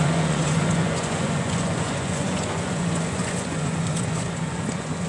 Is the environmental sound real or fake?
fake